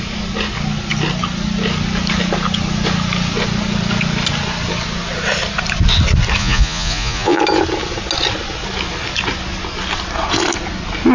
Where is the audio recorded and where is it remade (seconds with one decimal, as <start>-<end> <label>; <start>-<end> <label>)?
0.0-6.4 recorded; 6.4-7.4 remade; 7.4-11.1 recorded